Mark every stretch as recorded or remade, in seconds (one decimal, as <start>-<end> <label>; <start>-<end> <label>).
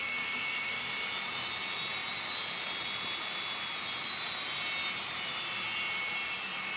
0.0-0.8 remade; 0.8-6.8 recorded